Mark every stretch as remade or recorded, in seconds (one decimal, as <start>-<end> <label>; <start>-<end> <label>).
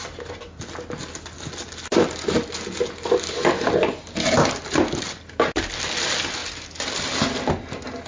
0.0-8.1 recorded